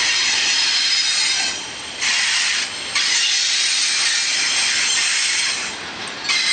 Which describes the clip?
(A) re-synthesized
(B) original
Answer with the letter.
B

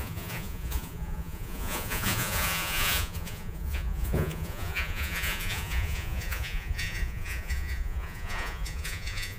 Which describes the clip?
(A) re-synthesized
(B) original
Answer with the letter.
A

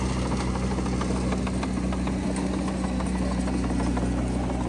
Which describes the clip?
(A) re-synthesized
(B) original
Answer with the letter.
B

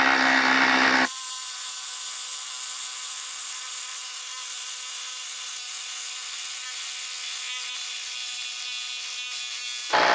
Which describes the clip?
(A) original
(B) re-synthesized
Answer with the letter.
A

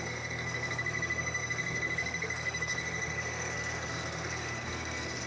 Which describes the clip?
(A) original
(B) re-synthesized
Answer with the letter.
B